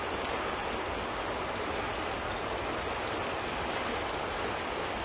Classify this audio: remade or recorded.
recorded